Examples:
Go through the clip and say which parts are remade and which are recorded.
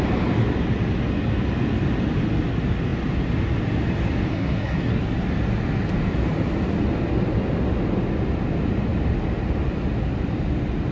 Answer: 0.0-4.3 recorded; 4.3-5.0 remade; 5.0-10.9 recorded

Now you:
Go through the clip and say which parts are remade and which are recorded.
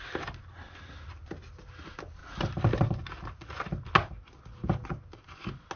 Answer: 0.0-5.8 recorded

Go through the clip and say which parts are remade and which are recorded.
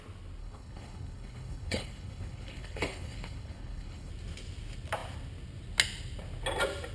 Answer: 0.0-0.4 recorded; 0.4-4.1 remade; 4.1-6.9 recorded